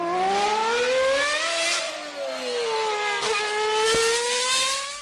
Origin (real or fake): real